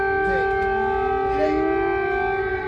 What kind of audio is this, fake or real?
real